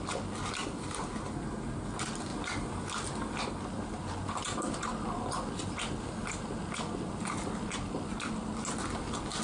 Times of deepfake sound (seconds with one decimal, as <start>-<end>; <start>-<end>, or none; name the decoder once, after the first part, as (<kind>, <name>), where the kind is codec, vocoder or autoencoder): none